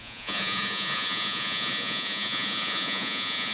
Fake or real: fake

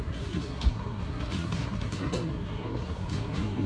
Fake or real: fake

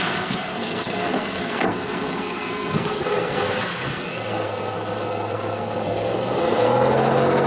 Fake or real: fake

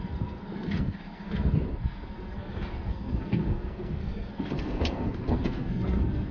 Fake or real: fake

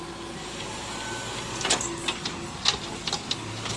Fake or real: real